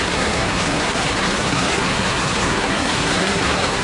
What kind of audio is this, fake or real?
fake